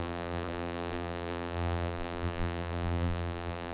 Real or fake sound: fake